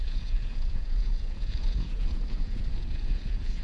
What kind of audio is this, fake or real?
fake